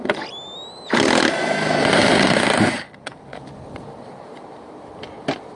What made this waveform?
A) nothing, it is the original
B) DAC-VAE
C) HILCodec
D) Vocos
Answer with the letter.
A